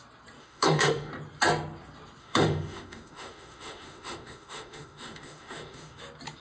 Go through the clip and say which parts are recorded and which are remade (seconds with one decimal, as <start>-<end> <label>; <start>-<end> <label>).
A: 0.0-0.4 recorded; 0.4-1.1 remade; 1.1-2.2 recorded; 2.2-6.0 remade; 6.0-6.4 recorded